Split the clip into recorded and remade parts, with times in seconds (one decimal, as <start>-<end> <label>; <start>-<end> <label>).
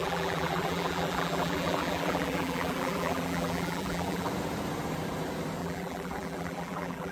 0.0-4.3 remade; 4.3-5.6 recorded; 5.6-7.1 remade